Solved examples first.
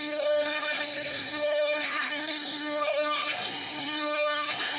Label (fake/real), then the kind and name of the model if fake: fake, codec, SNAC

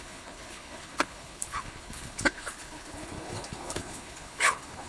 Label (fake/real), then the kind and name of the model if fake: fake, codec, HILCodec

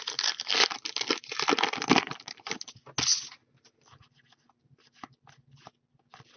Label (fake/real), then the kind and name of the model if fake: real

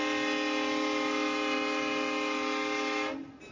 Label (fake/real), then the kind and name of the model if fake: real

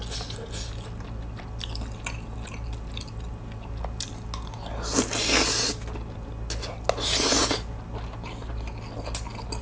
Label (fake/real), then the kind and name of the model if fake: real